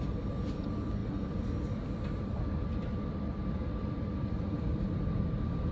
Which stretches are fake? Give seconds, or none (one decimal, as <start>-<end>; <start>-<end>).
none